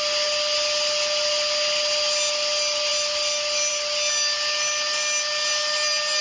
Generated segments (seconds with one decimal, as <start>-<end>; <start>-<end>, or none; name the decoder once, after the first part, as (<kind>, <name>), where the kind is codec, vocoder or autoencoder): none